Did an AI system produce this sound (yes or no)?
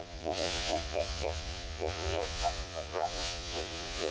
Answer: yes